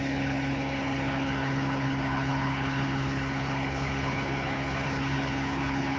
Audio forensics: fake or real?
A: fake